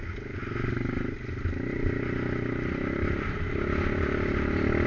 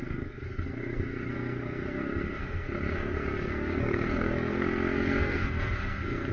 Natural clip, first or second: first